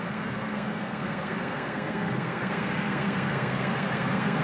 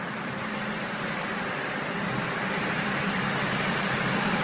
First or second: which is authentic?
second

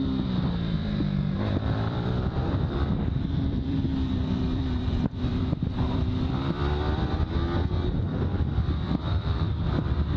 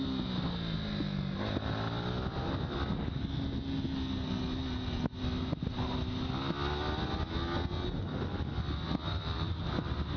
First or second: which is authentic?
second